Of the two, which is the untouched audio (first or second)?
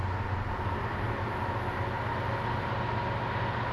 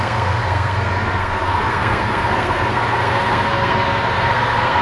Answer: first